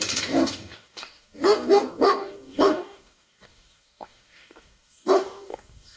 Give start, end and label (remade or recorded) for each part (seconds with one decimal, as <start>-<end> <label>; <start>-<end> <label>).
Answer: 0.0-6.0 remade